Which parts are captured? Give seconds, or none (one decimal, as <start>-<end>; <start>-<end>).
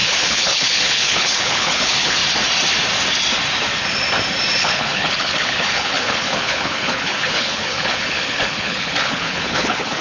2.2-4.6